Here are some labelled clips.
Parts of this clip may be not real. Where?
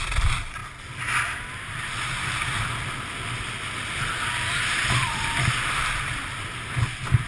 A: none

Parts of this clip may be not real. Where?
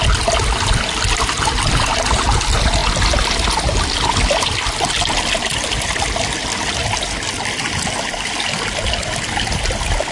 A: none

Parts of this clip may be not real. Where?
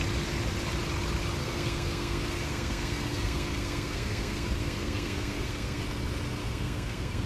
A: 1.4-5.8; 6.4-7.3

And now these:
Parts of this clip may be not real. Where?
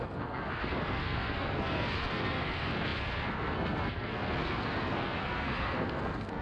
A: 0.0-6.4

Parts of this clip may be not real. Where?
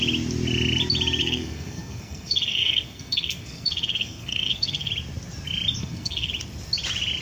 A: 1.2-4.9; 5.8-6.3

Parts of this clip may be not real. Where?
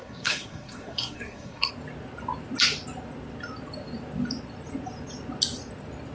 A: 0.0-1.7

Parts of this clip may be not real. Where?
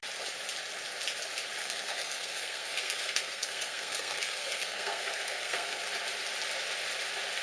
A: 1.6-5.8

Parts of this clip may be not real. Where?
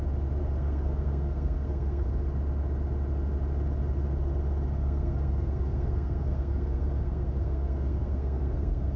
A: 0.4-2.1; 4.8-9.0